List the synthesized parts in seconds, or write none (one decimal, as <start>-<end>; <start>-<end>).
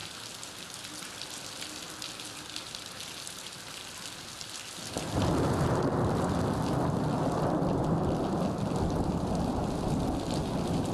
none